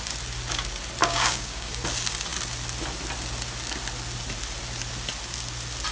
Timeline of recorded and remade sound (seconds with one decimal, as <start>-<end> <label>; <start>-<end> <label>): 0.0-1.0 recorded; 1.0-1.7 remade; 1.7-5.9 recorded